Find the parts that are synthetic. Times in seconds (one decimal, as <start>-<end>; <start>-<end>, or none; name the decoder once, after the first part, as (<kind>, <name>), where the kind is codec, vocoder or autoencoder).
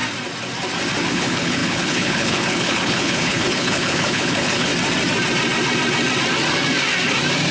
1.1-4.7 (codec, HILCodec)